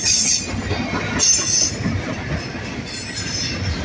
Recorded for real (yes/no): yes